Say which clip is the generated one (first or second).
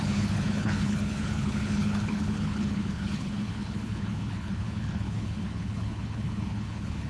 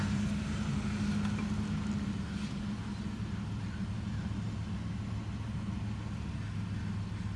first